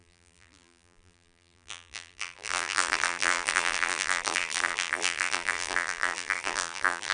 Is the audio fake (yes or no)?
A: yes